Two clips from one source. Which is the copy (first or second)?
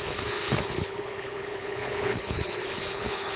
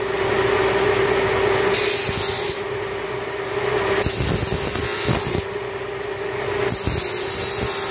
first